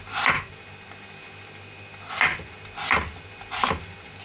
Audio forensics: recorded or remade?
recorded